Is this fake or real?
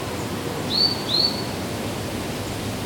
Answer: real